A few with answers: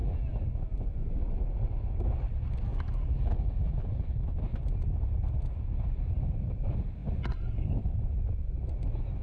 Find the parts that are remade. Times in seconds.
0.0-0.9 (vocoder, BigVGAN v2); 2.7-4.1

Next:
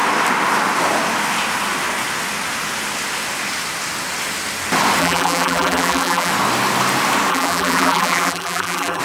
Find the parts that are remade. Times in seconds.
5.0-6.3 (vocoder, BigVGAN v2); 7.3-9.0

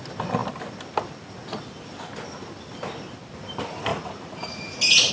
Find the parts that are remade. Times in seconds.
3.9-5.1 (vocoder, BigVGAN v2)

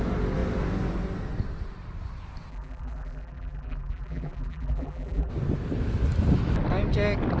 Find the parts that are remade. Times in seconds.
2.5-5.3 (vocoder, BigVGAN v2)